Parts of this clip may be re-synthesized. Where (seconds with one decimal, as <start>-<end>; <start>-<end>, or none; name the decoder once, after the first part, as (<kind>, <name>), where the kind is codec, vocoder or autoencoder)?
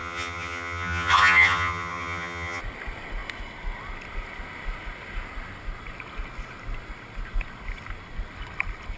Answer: 0.0-2.6 (vocoder, HiFi-GAN)